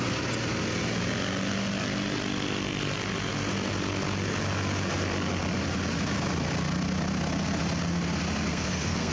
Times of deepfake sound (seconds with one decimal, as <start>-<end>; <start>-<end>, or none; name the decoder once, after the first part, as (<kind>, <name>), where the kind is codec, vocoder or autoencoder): 8.5-9.1 (codec, SNAC)